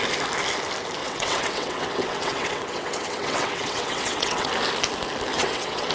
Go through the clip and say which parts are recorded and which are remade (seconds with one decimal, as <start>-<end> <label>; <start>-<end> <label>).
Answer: 0.0-1.0 recorded; 1.0-4.5 remade; 4.5-5.3 recorded; 5.3-5.9 remade